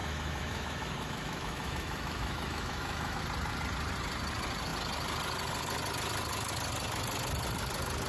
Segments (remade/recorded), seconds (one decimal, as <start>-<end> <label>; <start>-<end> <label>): 0.0-3.2 remade; 3.2-8.1 recorded